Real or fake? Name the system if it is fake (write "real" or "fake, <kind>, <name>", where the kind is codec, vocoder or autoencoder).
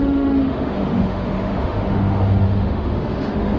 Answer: fake, autoencoder, DAC-VAE